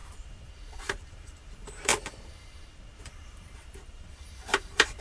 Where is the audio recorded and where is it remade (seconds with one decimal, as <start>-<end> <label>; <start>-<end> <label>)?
0.0-0.7 recorded; 0.7-1.9 remade; 1.9-3.0 recorded; 3.0-5.0 remade